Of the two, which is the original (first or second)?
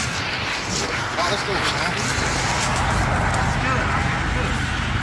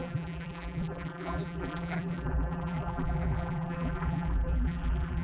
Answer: first